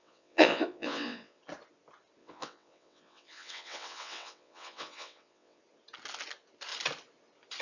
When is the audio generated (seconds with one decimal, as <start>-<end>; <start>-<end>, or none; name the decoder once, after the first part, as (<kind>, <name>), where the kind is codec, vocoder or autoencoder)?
0.0-1.4 (vocoder, WaveNeXt); 2.2-5.6